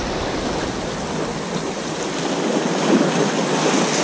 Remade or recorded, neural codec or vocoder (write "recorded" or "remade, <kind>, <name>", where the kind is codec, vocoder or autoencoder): recorded